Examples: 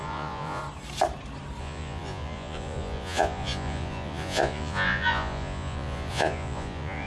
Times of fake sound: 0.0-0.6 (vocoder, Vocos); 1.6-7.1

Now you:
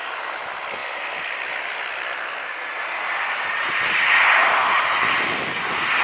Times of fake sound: none

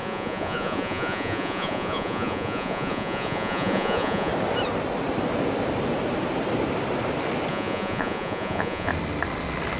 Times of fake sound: 0.0-4.3 (vocoder, Vocos); 7.5-8.9

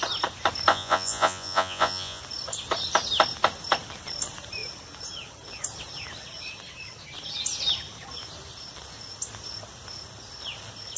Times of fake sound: 0.7-2.2 (vocoder, Vocos)

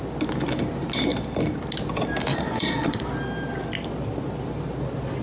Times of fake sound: 2.3-3.0 (vocoder, Vocos)

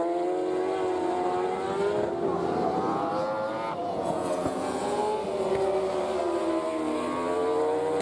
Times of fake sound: 3.8-5.0 (vocoder, Vocos)

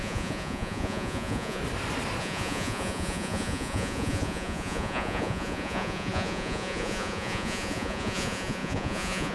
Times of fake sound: 0.0-1.6 (vocoder, Vocos); 2.2-9.3